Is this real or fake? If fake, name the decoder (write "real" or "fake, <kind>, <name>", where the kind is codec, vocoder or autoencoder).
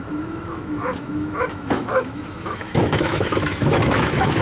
fake, autoencoder, DAC-VAE